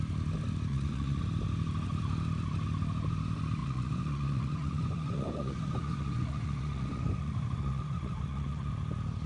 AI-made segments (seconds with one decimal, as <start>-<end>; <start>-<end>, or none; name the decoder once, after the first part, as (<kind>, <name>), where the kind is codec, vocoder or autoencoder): 0.7-1.2 (vocoder, Vocos); 3.6-8.7